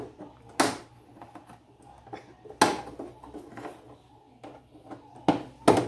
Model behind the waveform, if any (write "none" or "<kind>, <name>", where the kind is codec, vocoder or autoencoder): none